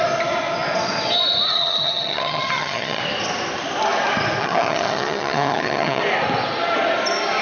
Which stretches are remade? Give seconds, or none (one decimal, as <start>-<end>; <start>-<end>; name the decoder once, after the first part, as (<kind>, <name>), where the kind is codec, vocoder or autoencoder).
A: 1.5-3.0 (vocoder, HiFi-GAN); 4.4-6.0